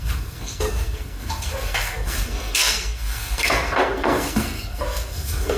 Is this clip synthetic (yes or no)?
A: yes